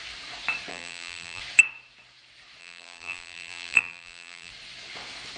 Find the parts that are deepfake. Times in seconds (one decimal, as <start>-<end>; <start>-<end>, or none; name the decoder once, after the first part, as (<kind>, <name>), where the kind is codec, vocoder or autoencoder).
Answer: 0.7-1.4 (vocoder, BigVGAN v2); 2.6-4.5